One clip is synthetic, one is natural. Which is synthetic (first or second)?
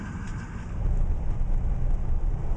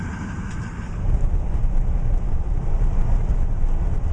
second